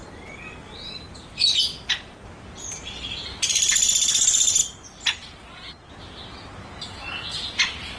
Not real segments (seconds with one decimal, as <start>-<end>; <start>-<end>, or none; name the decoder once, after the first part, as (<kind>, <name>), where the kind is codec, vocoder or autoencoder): none

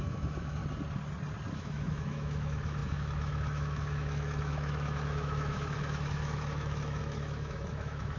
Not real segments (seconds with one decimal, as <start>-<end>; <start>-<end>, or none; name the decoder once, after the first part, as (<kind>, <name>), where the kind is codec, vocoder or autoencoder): 0.0-0.6 (autoencoder, DAC-VAE); 1.5-8.2